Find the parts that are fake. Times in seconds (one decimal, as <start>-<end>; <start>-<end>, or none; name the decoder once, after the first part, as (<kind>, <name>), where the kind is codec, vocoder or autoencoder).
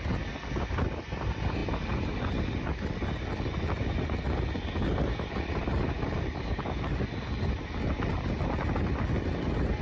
none